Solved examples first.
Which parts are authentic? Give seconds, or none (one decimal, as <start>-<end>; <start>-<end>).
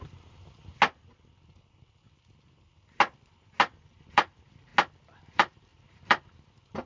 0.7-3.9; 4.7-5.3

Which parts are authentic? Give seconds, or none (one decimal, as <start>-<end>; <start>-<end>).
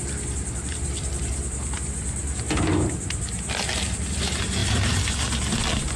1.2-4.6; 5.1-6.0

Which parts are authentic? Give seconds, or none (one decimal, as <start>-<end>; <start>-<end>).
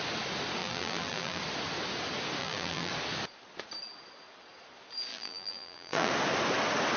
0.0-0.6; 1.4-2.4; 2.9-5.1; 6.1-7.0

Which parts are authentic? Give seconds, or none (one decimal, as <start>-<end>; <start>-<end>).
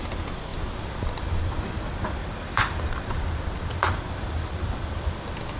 0.0-2.2; 3.3-5.6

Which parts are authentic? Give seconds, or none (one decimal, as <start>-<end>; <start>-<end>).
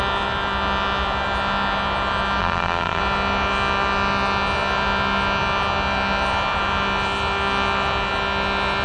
0.0-2.4; 3.0-8.8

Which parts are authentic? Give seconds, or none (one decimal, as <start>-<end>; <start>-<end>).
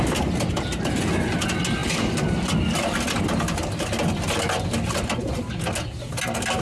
0.0-6.6